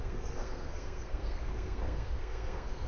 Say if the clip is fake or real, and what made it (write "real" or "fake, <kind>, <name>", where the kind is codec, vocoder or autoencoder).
fake, codec, SNAC